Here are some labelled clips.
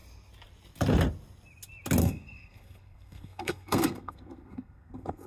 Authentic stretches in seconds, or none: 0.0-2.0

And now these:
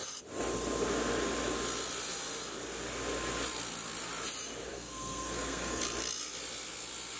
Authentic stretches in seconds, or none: 0.0-4.7; 5.8-7.2

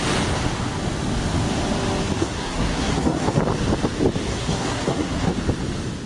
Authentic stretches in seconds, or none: 0.0-2.2; 3.4-4.3; 5.3-6.1

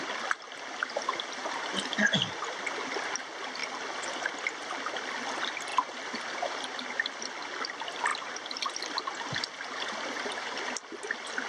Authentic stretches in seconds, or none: 0.0-11.5

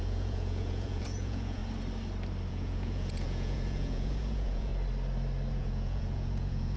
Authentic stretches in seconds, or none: 1.6-2.5; 4.7-5.5